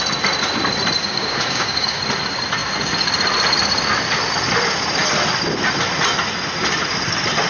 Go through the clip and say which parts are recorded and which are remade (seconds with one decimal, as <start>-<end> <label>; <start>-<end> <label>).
0.0-1.0 recorded; 1.0-2.0 remade; 2.0-7.5 recorded